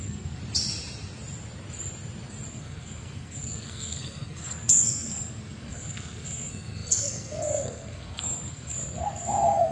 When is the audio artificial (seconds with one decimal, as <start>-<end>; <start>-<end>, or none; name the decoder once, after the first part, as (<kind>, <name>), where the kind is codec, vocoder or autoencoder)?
0.0-0.4 (codec, SNAC); 2.5-9.7